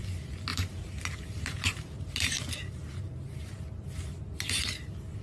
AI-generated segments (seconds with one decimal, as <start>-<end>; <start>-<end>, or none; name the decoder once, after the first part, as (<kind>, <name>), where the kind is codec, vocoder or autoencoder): 0.5-3.6 (vocoder, BigVGAN v2)